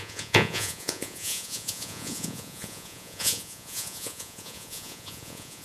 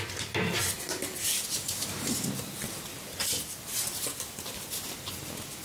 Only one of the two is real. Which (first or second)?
second